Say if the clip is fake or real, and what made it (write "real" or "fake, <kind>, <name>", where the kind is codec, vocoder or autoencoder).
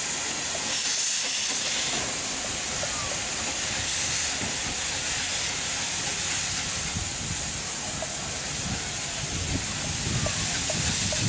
real